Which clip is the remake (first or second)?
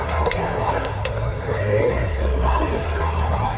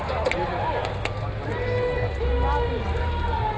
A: first